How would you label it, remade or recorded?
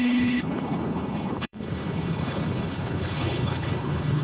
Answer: remade